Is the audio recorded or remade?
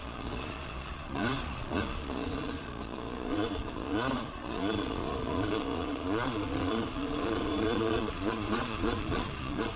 remade